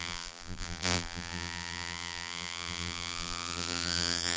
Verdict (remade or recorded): remade